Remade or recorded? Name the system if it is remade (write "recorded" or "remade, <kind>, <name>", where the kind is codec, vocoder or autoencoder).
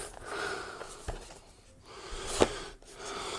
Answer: recorded